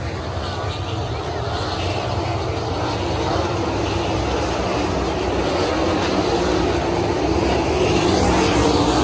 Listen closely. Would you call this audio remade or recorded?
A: recorded